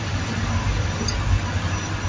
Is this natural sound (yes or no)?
yes